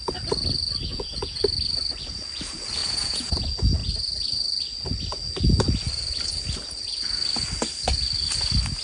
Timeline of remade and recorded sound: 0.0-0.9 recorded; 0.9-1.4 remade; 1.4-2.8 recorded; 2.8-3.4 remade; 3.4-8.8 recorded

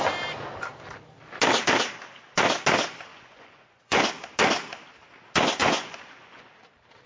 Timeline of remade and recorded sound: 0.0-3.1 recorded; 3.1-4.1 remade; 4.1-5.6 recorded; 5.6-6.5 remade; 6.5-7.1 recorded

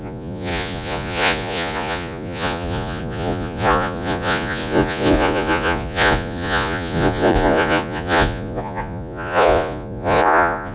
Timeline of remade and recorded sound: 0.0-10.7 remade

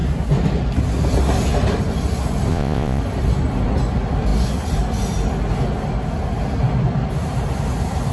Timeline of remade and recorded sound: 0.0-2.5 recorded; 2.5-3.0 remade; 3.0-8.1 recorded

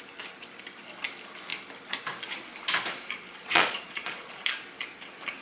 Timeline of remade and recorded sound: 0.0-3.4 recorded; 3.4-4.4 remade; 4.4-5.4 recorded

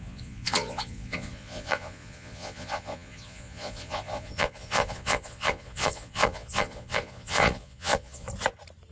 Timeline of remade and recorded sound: 0.0-8.3 remade; 8.3-8.9 recorded

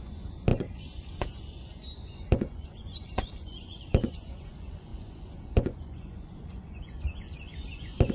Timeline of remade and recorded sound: 0.0-8.1 remade

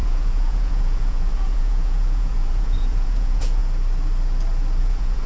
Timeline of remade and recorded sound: 0.0-3.6 remade; 3.6-4.8 recorded; 4.8-5.3 remade